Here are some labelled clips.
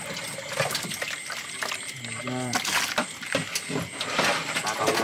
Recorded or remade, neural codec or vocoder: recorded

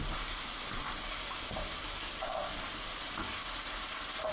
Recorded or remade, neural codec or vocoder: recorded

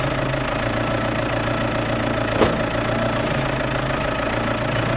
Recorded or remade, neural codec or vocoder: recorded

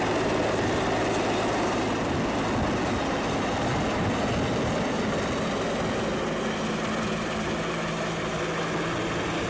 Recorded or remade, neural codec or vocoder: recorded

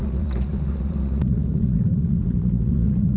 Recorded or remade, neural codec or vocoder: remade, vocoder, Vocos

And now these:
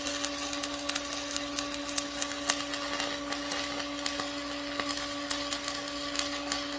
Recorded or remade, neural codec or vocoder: recorded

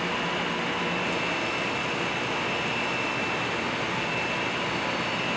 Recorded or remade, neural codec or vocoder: recorded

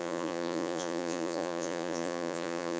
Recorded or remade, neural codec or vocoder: remade, vocoder, Vocos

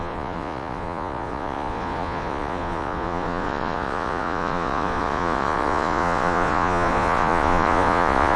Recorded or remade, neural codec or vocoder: remade, vocoder, Vocos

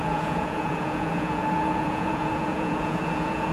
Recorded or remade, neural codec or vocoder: remade, vocoder, Vocos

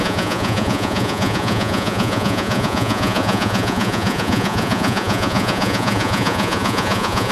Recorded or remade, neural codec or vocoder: remade, vocoder, Vocos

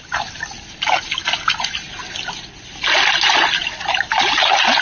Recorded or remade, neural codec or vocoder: recorded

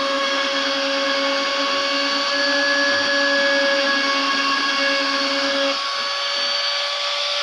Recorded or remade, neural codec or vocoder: recorded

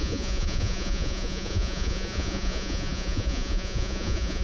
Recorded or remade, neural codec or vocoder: remade, vocoder, Vocos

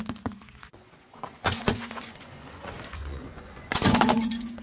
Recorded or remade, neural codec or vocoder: remade, vocoder, Vocos